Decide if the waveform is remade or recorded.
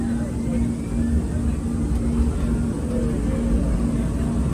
recorded